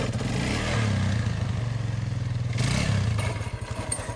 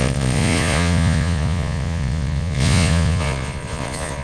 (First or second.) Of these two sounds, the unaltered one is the first